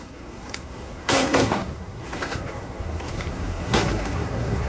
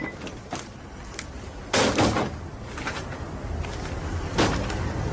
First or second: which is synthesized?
first